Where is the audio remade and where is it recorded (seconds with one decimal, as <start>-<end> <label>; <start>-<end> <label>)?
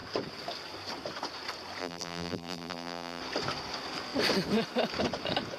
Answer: 0.0-1.8 recorded; 1.8-3.2 remade; 3.2-5.6 recorded